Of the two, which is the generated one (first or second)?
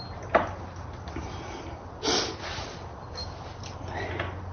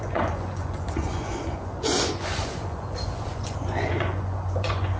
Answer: second